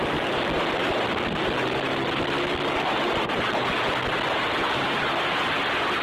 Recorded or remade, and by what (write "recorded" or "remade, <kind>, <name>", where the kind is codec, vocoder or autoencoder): recorded